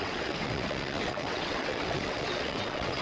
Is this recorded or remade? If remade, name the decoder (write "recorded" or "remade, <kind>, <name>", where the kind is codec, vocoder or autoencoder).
remade, vocoder, WaveNeXt